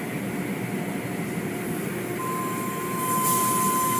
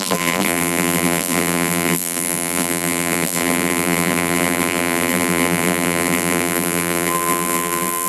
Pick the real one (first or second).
first